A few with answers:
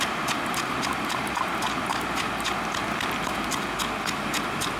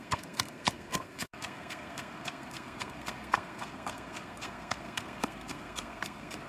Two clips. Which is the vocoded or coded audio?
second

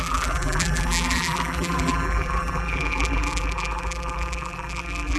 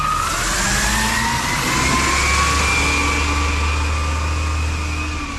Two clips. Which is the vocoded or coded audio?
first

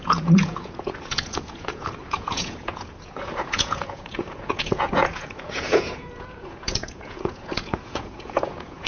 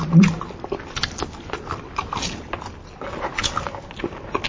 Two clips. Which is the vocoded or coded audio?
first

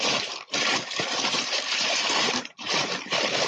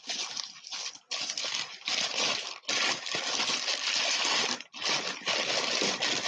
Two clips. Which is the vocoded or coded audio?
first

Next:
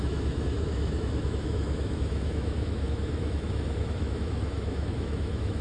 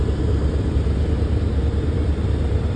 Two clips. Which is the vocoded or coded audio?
first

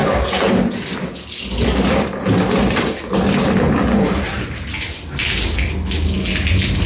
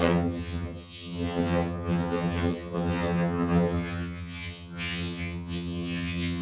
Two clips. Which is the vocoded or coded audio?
second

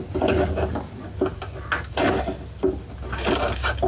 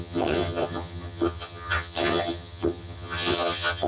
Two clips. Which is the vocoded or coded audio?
second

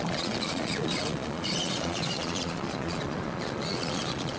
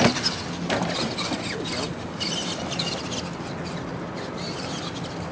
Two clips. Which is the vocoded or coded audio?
first